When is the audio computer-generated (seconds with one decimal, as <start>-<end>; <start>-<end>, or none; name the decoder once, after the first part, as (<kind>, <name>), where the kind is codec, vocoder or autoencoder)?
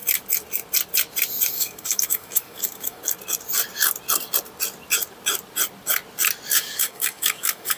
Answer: 1.5-3.0 (codec, DAC); 6.6-7.8